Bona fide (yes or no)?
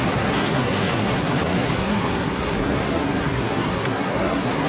no